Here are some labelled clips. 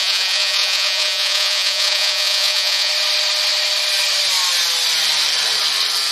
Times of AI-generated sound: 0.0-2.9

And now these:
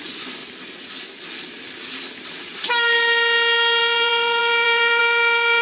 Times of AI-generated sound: 0.0-0.4; 3.8-5.6

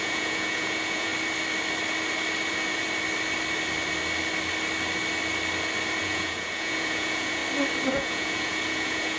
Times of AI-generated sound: 0.0-1.1; 6.0-7.4; 7.9-9.2